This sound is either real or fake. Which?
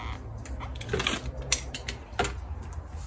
real